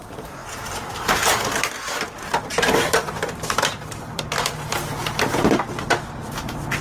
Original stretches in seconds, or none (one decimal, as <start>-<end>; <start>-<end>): 0.0-2.5; 5.0-6.8